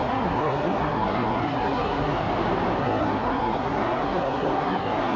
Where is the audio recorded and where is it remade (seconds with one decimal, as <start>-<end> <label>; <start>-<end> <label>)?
0.0-2.3 remade; 2.3-2.8 recorded; 2.8-5.2 remade